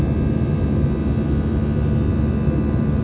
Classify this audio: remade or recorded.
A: recorded